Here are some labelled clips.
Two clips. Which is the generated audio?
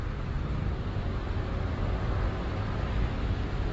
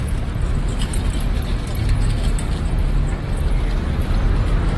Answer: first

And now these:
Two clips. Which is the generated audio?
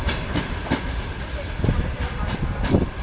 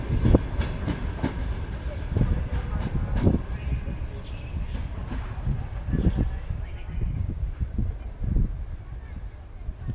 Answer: first